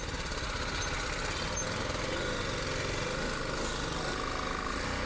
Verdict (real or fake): real